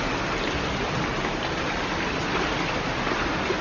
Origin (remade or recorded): recorded